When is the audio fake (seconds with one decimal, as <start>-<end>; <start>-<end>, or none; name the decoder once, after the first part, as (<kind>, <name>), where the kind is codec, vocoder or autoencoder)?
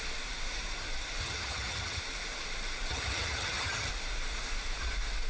1.2-2.0 (vocoder, HiFi-GAN); 2.9-3.9